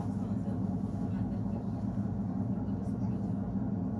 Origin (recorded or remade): recorded